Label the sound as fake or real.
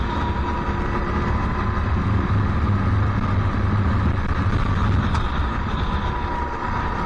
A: real